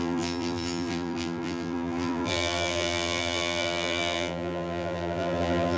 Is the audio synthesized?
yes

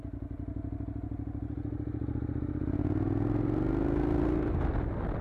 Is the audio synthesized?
no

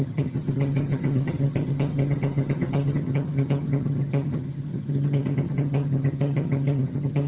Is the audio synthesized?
yes